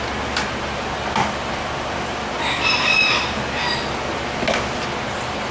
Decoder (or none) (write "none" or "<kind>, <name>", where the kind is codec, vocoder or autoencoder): none